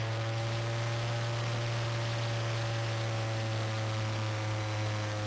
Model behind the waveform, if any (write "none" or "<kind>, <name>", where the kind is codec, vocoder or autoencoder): none